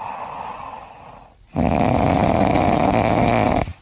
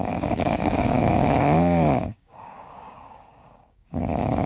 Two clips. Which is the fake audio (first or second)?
second